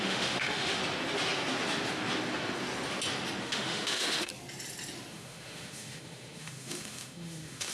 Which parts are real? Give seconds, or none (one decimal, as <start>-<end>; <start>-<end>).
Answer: 0.8-3.4; 4.3-5.1